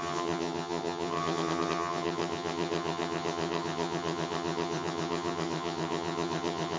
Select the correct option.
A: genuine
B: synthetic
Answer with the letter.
B